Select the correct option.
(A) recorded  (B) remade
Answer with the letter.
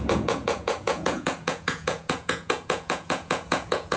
B